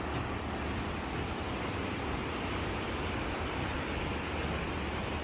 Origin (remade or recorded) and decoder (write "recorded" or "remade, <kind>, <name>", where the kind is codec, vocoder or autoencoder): recorded